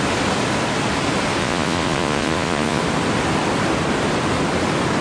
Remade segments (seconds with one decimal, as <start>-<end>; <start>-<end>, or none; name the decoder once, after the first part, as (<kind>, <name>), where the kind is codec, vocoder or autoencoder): 1.4-2.8 (vocoder, Vocos)